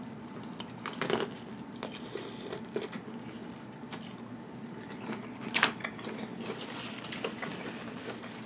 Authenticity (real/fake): real